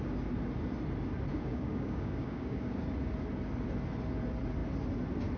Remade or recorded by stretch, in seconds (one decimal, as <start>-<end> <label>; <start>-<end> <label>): 0.0-1.3 recorded; 1.3-2.8 remade; 2.8-5.4 recorded